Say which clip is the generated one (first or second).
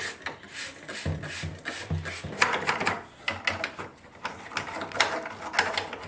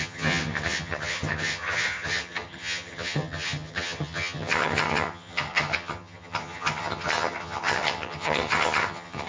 second